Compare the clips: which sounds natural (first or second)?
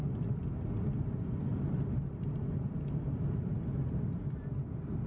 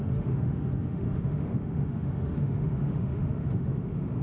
first